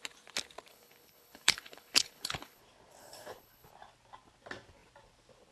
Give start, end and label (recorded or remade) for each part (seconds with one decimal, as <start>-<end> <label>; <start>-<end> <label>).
0.0-0.7 recorded; 0.7-2.6 remade; 2.6-3.0 recorded; 3.0-3.7 remade; 3.7-5.5 recorded